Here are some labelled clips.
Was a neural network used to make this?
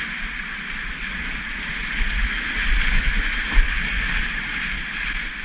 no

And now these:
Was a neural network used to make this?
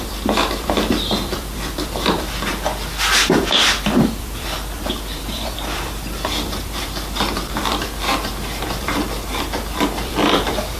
yes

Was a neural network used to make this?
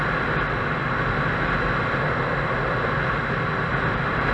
no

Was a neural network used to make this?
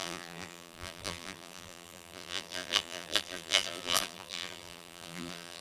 yes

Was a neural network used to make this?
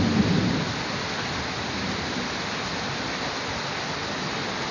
no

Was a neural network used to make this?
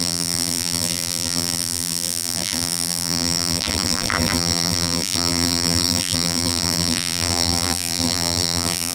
yes